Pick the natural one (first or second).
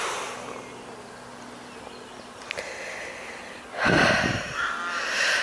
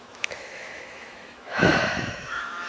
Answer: first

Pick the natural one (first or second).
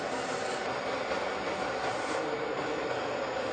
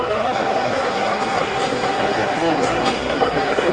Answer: first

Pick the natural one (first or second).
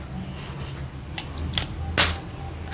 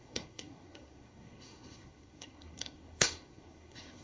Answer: first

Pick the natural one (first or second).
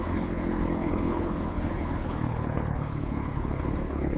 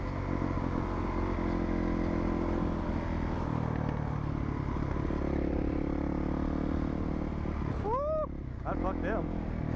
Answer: second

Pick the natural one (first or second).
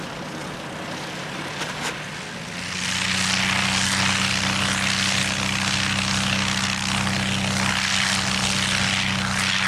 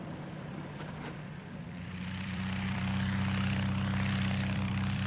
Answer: first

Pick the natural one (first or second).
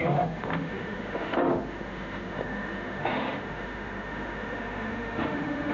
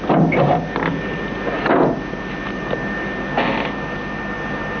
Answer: second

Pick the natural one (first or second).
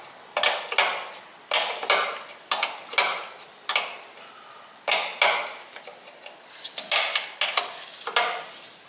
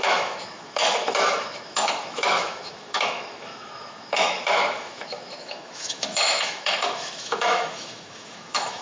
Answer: first